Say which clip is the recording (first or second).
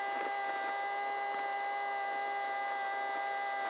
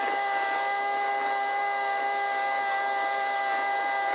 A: first